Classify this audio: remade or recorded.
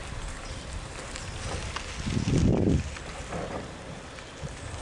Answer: recorded